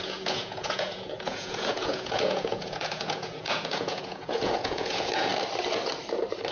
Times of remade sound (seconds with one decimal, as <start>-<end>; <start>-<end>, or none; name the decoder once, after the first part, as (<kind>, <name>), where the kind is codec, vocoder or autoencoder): 0.0-5.3 (vocoder, Vocos)